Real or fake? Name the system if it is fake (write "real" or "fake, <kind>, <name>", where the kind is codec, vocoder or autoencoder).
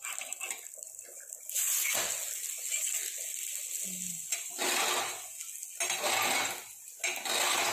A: real